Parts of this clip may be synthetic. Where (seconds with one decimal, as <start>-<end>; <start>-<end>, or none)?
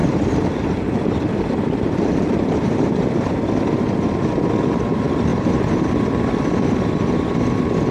0.0-3.3; 5.3-5.9